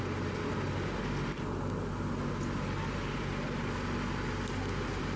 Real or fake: real